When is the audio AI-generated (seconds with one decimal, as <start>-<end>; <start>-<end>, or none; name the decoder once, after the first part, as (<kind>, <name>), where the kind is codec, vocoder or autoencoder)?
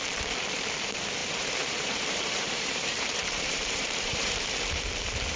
1.2-4.4 (vocoder, BigVGAN v2)